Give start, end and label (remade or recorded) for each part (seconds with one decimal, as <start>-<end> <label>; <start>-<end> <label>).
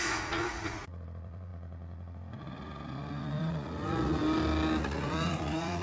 0.0-4.2 remade; 4.2-4.8 recorded; 4.8-5.8 remade